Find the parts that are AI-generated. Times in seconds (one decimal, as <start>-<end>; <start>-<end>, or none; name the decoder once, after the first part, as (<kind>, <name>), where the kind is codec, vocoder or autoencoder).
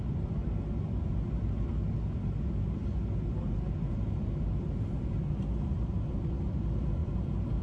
none